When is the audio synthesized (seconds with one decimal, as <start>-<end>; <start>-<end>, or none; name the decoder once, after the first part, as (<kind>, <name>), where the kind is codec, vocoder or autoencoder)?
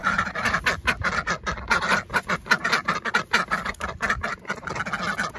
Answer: 0.0-0.6 (vocoder, BigVGAN v2); 2.6-3.2